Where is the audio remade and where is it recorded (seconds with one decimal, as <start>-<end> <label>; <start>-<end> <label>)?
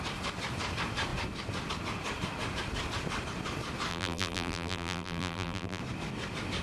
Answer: 0.0-3.9 recorded; 3.9-5.8 remade; 5.8-6.6 recorded